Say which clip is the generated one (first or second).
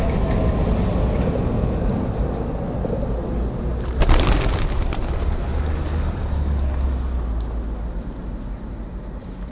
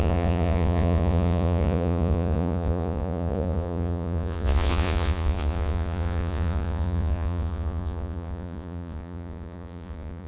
second